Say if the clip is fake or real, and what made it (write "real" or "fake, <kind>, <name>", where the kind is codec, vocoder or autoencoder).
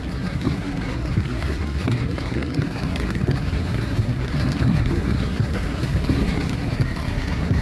fake, codec, SNAC